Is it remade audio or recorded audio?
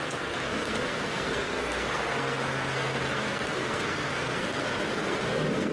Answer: remade